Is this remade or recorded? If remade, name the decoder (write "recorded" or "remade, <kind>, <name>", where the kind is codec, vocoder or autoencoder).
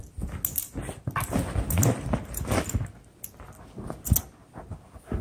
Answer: recorded